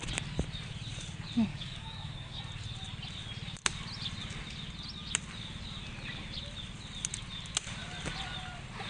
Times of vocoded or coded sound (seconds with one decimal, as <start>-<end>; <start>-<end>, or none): 1.5-2.4

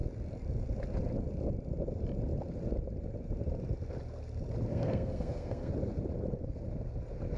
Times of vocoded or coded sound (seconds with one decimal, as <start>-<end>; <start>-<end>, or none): 4.7-5.7

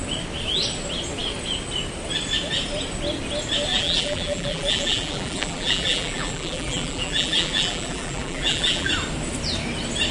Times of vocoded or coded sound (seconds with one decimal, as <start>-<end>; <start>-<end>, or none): 3.7-8.9

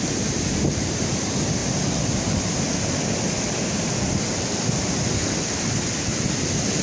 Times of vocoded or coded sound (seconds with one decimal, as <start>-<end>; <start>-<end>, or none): 1.6-4.0; 6.1-6.8

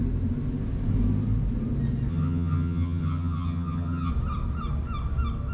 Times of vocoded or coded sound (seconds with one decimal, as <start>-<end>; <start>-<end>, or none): 2.1-4.1